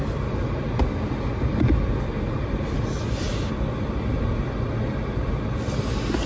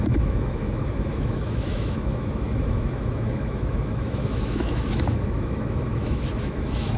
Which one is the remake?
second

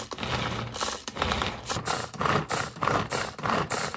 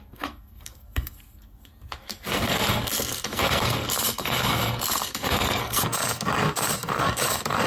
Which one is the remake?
second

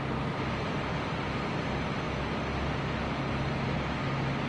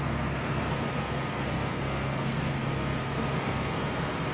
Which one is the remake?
second